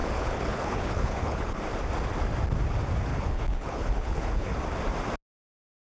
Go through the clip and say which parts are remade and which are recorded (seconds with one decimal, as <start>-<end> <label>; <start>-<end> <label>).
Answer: 0.0-1.6 remade; 1.6-3.1 recorded; 3.1-4.6 remade; 4.6-5.8 recorded